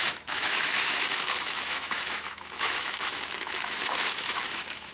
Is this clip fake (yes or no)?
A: yes